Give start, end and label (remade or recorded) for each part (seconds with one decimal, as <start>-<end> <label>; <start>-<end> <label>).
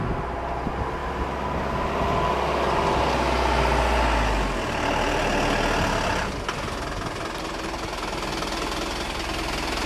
0.0-9.9 recorded